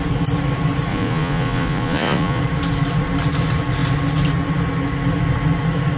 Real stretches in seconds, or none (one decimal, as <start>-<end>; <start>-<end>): 0.0-0.9; 2.4-6.0